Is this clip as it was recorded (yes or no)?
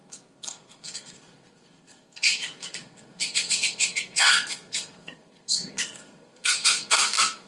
no